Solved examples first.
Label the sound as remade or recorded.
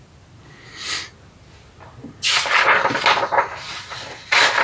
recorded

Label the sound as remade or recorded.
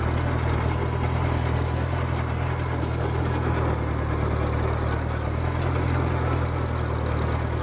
recorded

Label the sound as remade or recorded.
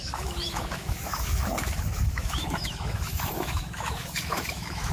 remade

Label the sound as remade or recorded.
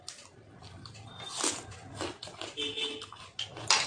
recorded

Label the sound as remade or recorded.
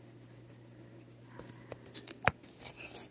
recorded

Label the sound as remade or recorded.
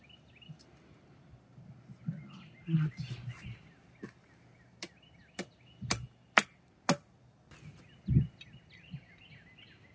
recorded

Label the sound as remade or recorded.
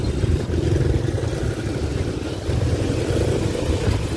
recorded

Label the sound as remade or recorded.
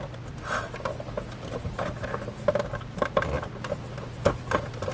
recorded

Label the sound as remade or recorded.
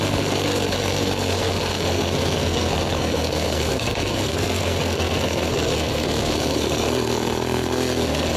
remade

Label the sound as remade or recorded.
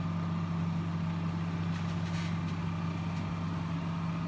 recorded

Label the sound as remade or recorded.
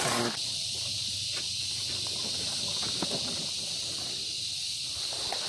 recorded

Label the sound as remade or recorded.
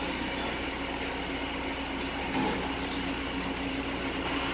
recorded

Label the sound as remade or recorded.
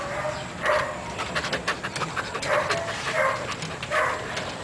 recorded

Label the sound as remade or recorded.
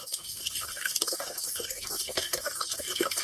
remade